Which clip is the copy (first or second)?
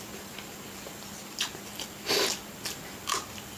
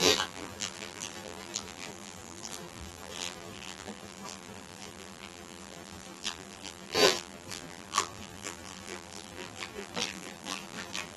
second